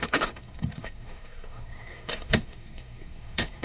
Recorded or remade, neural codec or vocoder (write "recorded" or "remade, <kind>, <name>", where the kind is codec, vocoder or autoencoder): remade, codec, SNAC